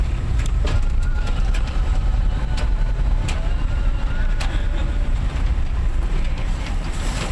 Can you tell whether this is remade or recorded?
remade